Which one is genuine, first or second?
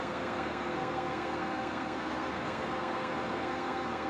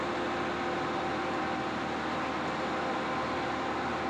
second